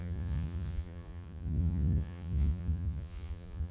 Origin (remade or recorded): remade